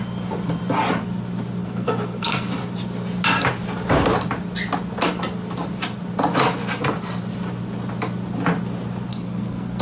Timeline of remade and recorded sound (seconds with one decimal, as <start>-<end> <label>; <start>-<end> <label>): 0.0-1.6 recorded; 1.6-2.5 remade; 2.5-9.1 recorded; 9.1-9.8 remade